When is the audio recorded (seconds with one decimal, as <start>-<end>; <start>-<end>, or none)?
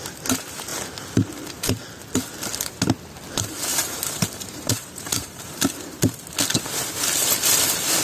0.0-3.7; 5.7-8.0